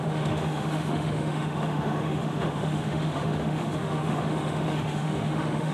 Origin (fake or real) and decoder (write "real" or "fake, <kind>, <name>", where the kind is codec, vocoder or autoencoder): fake, autoencoder, DAC-VAE